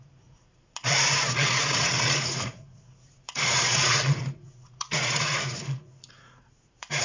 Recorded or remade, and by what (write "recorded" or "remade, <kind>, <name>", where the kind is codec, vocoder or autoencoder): remade, vocoder, Vocos